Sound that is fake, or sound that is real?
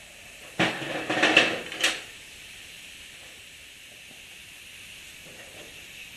real